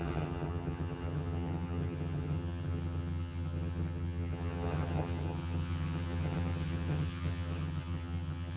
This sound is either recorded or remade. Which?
remade